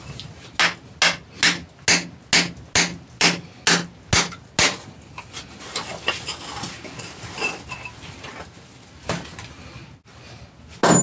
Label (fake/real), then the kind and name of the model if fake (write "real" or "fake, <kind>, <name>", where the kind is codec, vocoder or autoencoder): real